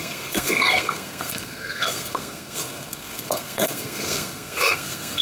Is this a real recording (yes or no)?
no